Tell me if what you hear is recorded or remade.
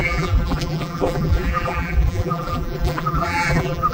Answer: remade